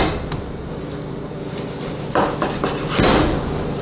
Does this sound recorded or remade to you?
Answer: recorded